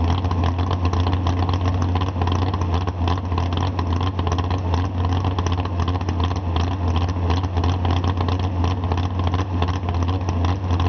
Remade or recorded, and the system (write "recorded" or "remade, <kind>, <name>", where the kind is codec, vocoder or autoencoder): recorded